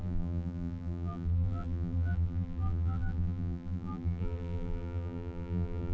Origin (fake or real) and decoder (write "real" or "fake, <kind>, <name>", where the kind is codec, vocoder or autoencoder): fake, vocoder, BigVGAN v2